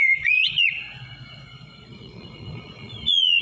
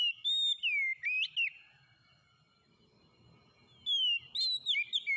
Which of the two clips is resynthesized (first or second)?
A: first